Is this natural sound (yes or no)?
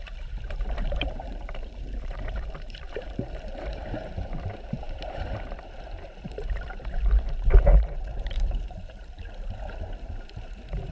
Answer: no